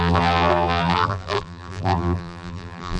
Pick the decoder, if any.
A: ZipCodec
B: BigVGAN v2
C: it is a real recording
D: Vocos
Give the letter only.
B